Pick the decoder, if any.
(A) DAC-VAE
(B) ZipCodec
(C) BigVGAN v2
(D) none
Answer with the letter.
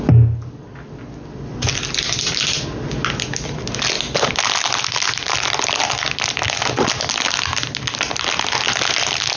D